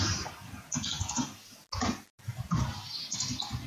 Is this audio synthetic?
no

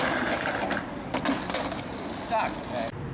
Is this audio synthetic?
no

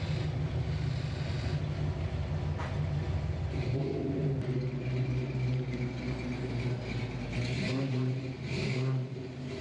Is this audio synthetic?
no